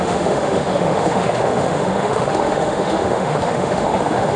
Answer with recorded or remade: remade